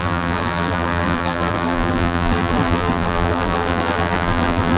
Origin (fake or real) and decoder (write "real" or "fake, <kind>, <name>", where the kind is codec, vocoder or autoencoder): fake, vocoder, BigVGAN v2